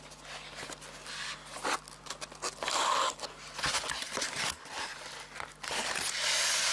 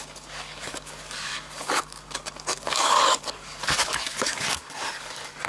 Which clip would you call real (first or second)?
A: first